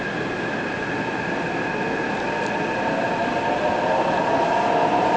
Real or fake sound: real